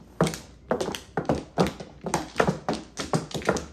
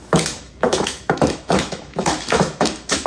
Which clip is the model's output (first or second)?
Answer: second